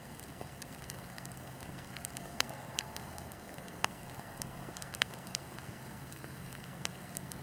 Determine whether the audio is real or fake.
fake